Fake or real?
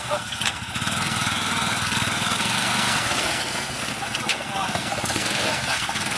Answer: fake